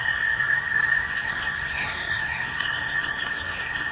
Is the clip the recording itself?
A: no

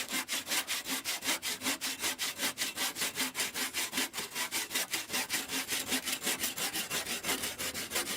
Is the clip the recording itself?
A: yes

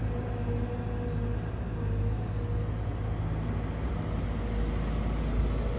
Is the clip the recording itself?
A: yes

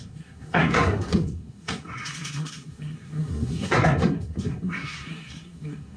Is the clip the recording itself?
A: no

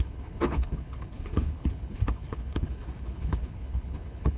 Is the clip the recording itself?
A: no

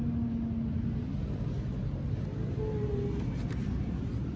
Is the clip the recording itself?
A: yes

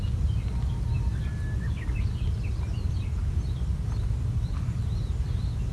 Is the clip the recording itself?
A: yes